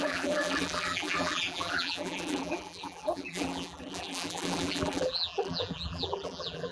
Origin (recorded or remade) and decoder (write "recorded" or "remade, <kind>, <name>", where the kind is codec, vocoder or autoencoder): remade, vocoder, BigVGAN v2